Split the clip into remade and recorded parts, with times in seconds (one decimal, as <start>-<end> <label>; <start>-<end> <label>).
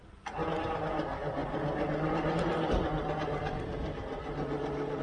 0.0-5.0 recorded